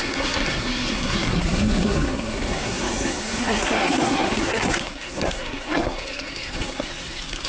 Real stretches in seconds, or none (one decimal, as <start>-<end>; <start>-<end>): none